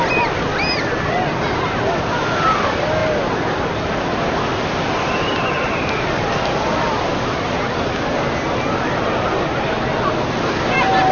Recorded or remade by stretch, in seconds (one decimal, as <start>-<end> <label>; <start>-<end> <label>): 0.0-11.1 recorded